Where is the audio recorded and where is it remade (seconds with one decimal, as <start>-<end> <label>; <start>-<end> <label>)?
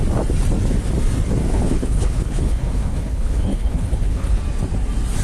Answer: 0.0-1.5 recorded; 1.5-4.4 remade; 4.4-5.2 recorded